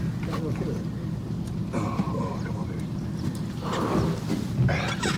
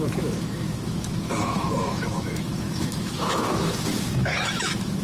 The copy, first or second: second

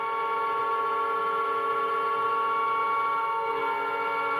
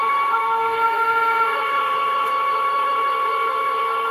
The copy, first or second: second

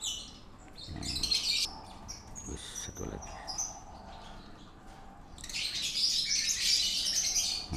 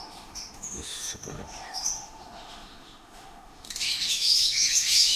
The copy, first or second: second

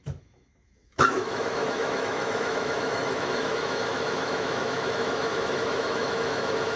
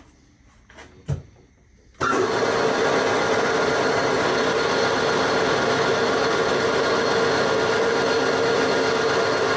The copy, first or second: first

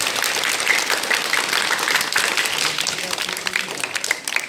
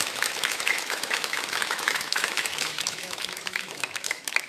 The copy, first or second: second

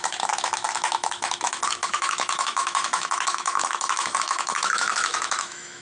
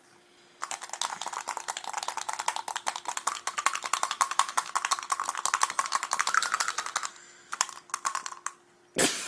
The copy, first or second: first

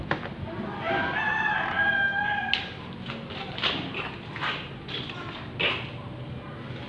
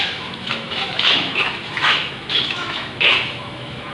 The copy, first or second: second